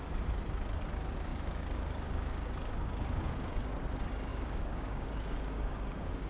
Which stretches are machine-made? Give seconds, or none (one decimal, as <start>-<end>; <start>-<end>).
1.3-3.5; 4.3-6.3